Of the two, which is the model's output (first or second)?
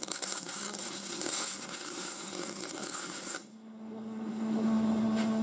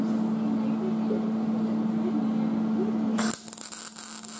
first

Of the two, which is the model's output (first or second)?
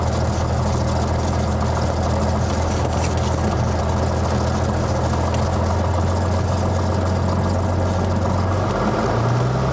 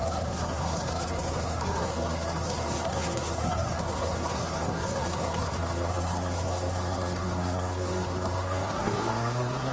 second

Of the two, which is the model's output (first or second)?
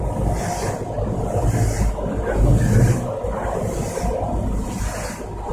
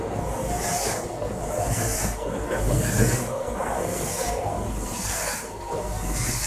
second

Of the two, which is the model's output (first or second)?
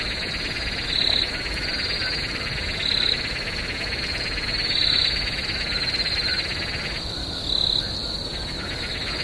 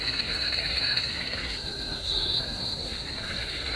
second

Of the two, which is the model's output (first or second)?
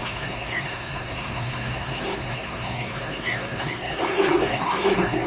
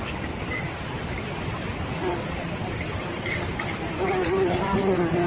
first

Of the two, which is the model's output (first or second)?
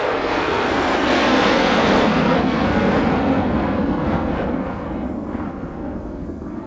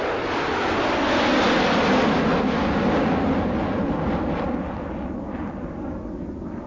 first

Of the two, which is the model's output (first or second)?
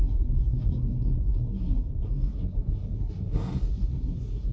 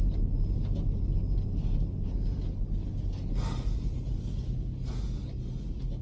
first